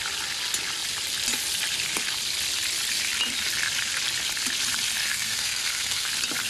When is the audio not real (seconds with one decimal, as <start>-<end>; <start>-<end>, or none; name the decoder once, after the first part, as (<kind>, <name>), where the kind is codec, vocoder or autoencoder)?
5.0-6.1 (codec, SNAC)